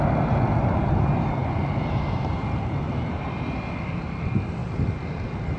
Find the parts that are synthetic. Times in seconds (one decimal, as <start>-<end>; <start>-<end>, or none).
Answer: 1.4-3.6